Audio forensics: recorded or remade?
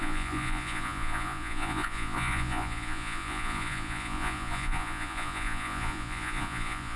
remade